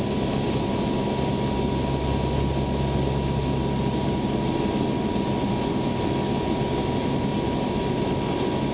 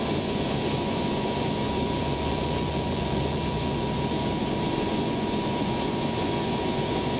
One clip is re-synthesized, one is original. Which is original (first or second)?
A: first